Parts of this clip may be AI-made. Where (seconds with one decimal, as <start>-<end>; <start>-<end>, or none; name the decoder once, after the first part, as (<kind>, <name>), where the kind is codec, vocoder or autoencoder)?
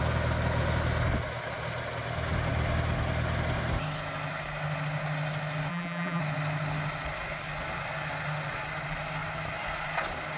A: 5.7-6.2 (vocoder, BigVGAN v2)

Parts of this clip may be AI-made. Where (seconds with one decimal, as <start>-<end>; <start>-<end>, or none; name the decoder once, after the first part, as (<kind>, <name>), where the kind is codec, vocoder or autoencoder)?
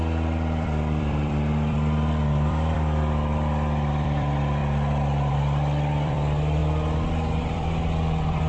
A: 0.0-4.6 (vocoder, BigVGAN v2); 5.3-6.6; 7.4-8.5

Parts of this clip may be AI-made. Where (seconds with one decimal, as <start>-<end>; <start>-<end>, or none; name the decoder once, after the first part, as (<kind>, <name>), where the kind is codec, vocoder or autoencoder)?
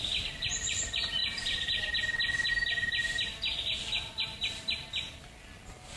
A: 3.0-4.9 (vocoder, BigVGAN v2)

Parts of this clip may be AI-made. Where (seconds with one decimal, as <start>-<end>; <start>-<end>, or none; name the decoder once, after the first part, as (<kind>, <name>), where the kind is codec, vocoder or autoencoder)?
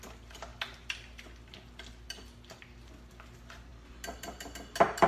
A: none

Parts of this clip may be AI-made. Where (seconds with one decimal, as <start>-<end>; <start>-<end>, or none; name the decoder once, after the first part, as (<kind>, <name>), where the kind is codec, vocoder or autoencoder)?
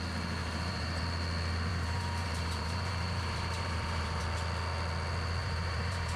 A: 0.4-1.0 (vocoder, BigVGAN v2); 1.7-4.2; 5.4-6.2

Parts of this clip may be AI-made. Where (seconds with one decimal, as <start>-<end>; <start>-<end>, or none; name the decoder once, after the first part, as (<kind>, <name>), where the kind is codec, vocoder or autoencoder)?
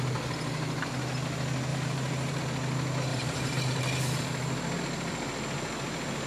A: 1.7-2.4 (vocoder, BigVGAN v2); 3.1-4.0